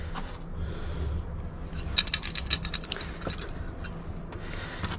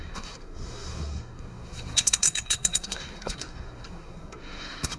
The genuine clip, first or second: first